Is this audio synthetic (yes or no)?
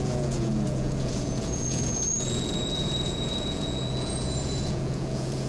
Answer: yes